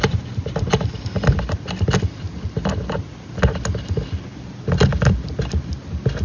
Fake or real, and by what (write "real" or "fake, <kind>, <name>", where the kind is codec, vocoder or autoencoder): real